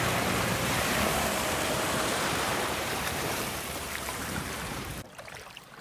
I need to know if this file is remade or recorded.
remade